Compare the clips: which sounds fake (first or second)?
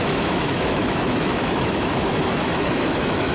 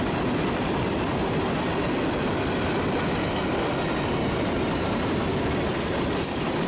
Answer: first